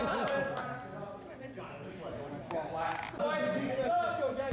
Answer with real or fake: real